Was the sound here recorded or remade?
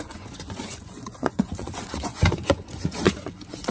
remade